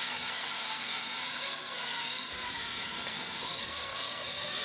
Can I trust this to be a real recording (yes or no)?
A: no